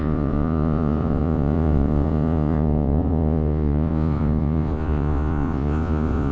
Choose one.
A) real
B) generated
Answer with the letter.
B